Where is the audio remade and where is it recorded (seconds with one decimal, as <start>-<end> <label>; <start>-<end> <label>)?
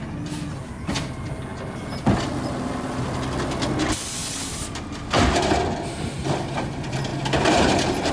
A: 0.0-8.1 recorded